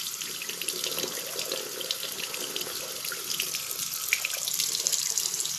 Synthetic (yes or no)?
no